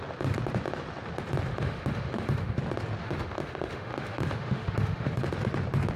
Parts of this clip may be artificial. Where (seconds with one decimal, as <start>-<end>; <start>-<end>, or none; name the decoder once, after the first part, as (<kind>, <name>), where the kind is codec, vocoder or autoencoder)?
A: 1.5-2.6 (autoencoder, DAC-VAE); 3.0-5.2